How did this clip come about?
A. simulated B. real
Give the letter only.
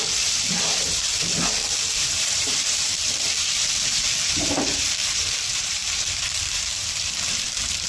A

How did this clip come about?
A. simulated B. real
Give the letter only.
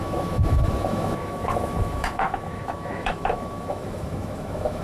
A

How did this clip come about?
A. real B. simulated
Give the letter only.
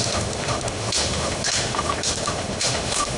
B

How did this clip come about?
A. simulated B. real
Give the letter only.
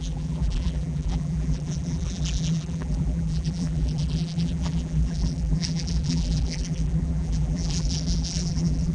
A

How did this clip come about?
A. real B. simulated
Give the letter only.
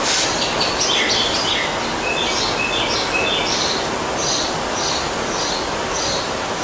A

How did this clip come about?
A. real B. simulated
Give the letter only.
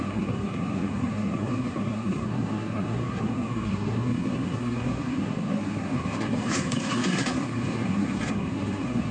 B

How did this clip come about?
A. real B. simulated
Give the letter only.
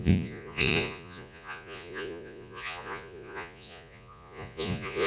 B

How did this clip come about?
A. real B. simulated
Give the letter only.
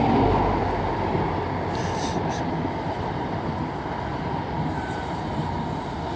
A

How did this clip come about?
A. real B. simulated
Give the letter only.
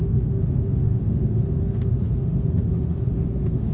B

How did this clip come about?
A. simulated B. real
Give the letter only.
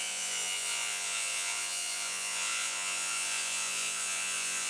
A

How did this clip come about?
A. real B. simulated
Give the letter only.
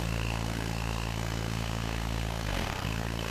B